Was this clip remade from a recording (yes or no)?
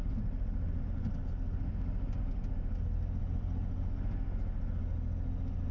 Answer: no